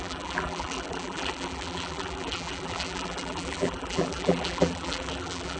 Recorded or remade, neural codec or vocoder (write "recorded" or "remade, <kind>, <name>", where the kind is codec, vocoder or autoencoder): remade, vocoder, BigVGAN v2